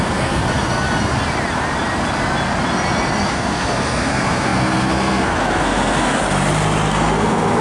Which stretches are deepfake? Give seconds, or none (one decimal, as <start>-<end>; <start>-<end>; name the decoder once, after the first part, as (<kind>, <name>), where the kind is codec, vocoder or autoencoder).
0.0-0.4 (codec, SNAC); 3.3-6.2; 6.9-7.6